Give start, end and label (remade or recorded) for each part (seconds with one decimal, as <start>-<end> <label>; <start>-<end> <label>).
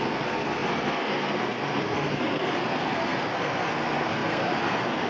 0.0-5.1 remade